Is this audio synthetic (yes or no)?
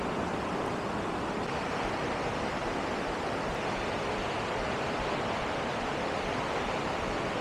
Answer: no